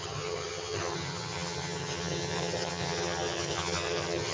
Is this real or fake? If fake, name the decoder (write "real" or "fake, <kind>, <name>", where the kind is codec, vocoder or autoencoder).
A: fake, vocoder, HiFi-GAN